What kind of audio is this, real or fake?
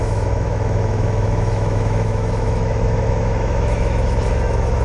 fake